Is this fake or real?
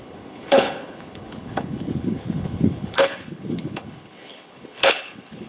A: fake